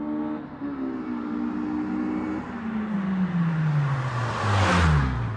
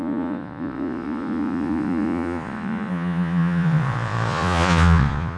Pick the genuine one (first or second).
first